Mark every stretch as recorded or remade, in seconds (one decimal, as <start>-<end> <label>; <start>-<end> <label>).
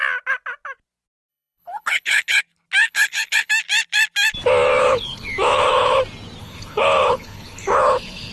0.0-1.3 recorded; 1.3-2.4 remade; 2.4-2.8 recorded; 2.8-3.5 remade; 3.5-4.8 recorded; 4.8-6.0 remade; 6.0-6.4 recorded; 6.4-8.3 remade